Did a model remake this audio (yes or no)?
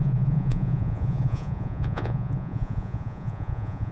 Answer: yes